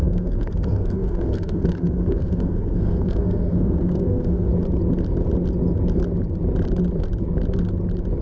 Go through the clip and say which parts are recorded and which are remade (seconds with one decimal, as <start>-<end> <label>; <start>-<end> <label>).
0.0-4.5 remade; 4.5-8.2 recorded